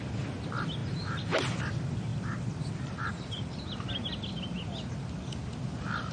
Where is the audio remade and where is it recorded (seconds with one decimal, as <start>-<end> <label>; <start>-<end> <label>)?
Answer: 0.0-0.8 recorded; 0.8-1.6 remade; 1.6-2.1 recorded; 2.1-3.6 remade; 3.6-6.1 recorded